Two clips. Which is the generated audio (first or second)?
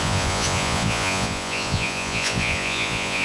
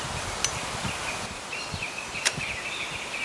first